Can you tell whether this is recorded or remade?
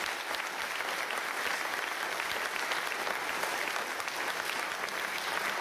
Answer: recorded